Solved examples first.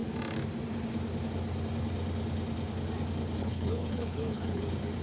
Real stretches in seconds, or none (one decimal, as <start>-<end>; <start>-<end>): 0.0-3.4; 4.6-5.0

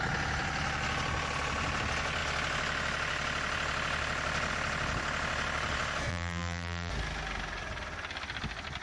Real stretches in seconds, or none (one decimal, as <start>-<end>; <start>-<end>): 0.0-6.1; 6.9-8.8

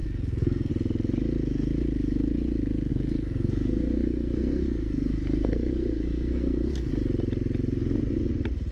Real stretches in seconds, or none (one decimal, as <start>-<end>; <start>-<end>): 0.7-2.9; 6.9-8.7

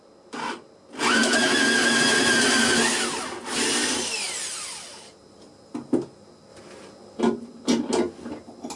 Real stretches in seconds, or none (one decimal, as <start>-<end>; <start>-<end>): 0.0-8.8